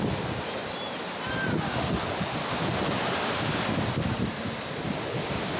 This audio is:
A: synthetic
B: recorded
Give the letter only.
B